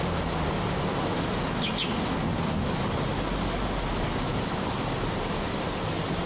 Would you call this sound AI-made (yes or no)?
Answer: no